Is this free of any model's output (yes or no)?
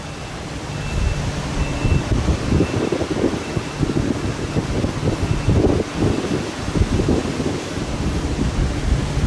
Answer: yes